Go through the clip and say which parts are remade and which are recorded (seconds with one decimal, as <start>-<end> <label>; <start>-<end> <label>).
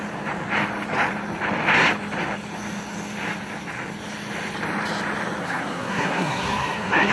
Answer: 0.0-5.4 recorded; 5.4-7.1 remade